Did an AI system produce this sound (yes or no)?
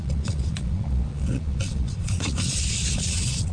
yes